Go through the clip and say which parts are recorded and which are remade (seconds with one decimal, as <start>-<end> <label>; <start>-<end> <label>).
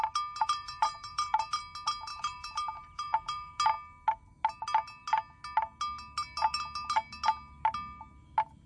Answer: 0.0-0.4 recorded; 0.4-1.6 remade; 1.6-2.1 recorded; 2.1-3.5 remade; 3.5-8.7 recorded